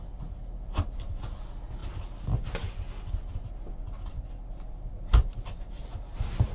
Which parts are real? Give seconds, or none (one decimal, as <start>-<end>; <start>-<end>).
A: 0.0-6.5